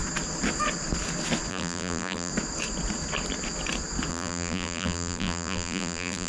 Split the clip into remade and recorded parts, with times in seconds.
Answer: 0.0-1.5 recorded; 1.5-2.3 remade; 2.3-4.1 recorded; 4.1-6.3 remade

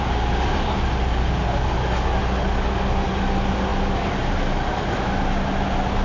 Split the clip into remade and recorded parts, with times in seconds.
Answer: 0.0-6.0 recorded

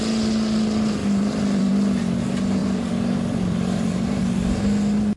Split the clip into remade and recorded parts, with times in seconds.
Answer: 0.0-1.0 recorded; 1.0-1.7 remade; 1.7-2.6 recorded; 2.6-4.6 remade; 4.6-5.2 recorded

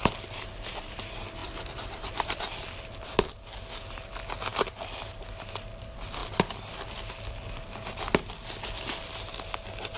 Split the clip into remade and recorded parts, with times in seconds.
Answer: 0.0-1.4 recorded; 1.4-3.3 remade; 3.3-6.2 recorded; 6.2-7.0 remade; 7.0-10.0 recorded

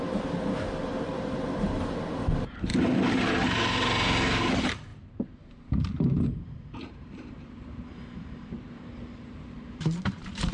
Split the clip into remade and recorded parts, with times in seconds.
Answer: 0.0-2.7 remade; 2.7-4.5 recorded; 4.5-10.5 remade

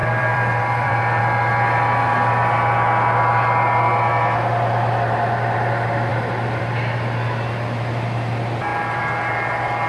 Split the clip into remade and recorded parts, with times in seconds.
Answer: 0.0-1.2 remade; 1.2-8.7 recorded; 8.7-9.3 remade; 9.3-9.9 recorded

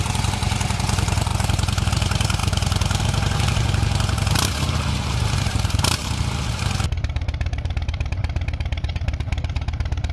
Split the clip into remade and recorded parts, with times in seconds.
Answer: 0.0-10.1 remade